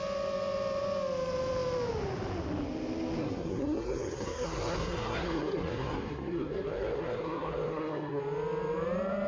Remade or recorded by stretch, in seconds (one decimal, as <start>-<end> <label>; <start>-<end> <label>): 0.0-3.2 recorded; 3.2-8.2 remade; 8.2-9.3 recorded